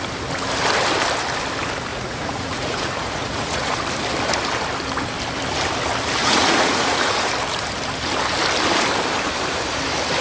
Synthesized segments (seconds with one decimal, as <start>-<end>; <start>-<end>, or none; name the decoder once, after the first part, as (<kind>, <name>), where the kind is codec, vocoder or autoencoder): 1.9-3.8 (vocoder, Vocos); 6.2-7.3